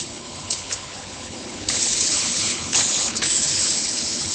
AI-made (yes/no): yes